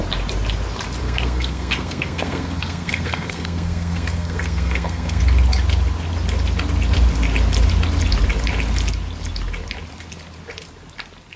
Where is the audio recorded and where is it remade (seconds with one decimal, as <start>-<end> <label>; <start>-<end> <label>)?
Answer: 0.0-1.0 recorded; 1.0-5.2 remade; 5.2-11.4 recorded

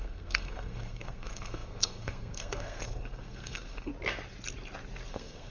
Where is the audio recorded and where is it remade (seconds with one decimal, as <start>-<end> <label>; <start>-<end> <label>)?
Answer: 0.0-3.9 remade; 3.9-5.1 recorded; 5.1-5.5 remade

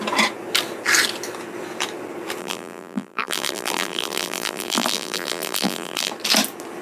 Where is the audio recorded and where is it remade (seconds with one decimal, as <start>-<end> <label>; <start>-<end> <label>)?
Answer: 0.0-2.4 recorded; 2.4-6.1 remade; 6.1-6.8 recorded

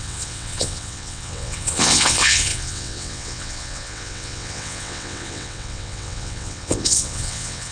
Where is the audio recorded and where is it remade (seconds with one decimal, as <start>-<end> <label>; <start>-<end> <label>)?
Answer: 0.0-7.7 remade

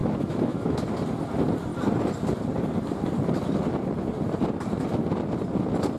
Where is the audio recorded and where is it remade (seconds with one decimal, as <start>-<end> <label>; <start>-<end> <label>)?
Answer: 0.0-0.8 remade; 0.8-6.0 recorded

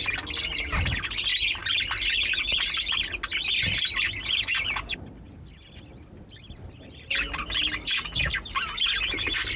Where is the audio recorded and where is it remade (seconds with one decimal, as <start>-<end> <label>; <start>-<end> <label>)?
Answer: 0.0-9.6 recorded

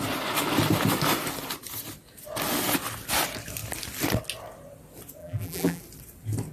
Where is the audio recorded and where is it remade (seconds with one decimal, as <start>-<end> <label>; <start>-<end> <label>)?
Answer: 0.0-5.2 recorded; 5.2-5.8 remade; 5.8-6.5 recorded